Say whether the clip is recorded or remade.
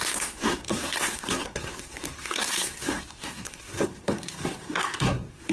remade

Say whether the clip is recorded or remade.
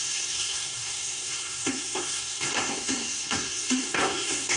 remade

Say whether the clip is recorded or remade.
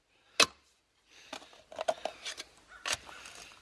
recorded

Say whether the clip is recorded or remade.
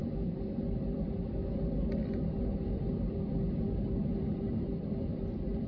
remade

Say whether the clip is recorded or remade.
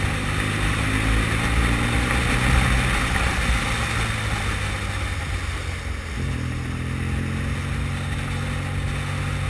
recorded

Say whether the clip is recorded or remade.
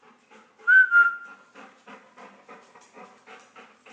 recorded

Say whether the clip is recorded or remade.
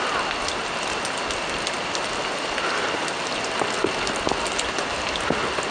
recorded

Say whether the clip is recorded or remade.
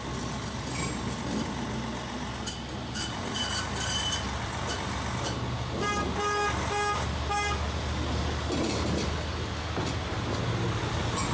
recorded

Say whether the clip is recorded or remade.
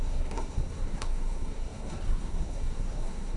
remade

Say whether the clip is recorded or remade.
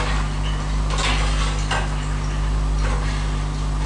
recorded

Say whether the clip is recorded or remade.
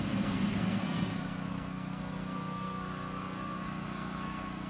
remade